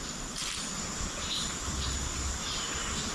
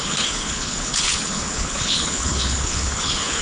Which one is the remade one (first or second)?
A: second